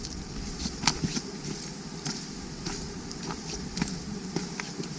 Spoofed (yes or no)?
no